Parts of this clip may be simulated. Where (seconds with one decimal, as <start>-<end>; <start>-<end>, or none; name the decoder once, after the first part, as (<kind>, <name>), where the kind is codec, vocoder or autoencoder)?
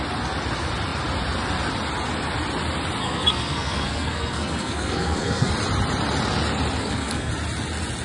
3.0-5.5 (codec, SNAC); 6.8-7.3